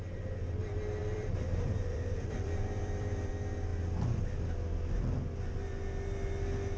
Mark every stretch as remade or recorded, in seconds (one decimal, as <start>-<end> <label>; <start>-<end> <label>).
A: 0.0-1.0 recorded; 1.0-3.3 remade; 3.3-6.8 recorded

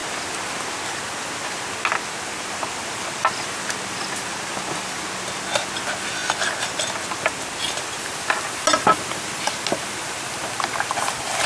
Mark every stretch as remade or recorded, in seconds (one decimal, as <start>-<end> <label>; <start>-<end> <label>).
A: 0.0-11.5 recorded

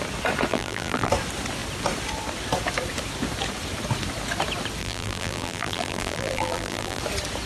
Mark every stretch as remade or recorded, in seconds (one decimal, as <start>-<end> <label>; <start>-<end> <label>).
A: 0.0-0.5 recorded; 0.5-1.1 remade; 1.1-4.8 recorded; 4.8-7.0 remade; 7.0-7.5 recorded

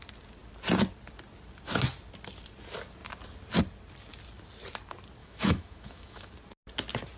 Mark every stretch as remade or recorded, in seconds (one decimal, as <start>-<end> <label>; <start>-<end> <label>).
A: 0.0-5.2 recorded; 5.2-6.3 remade; 6.3-7.2 recorded